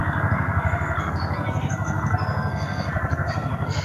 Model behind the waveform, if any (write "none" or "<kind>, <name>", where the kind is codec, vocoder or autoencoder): codec, SNAC